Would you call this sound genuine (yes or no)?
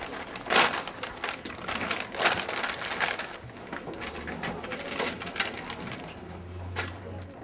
yes